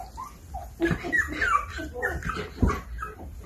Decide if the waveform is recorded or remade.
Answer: recorded